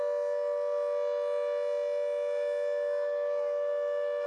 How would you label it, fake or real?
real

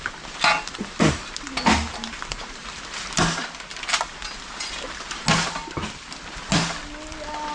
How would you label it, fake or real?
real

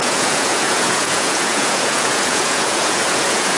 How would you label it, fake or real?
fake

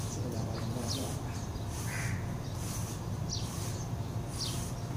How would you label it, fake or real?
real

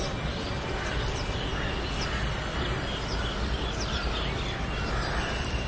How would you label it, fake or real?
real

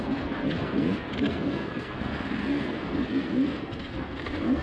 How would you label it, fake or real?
fake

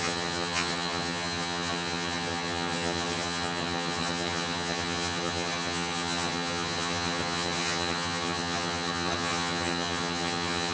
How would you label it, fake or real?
fake